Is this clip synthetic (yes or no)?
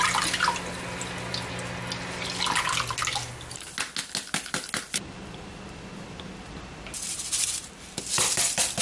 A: no